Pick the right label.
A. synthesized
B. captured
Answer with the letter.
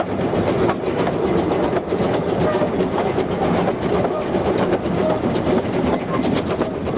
B